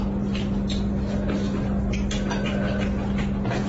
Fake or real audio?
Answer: real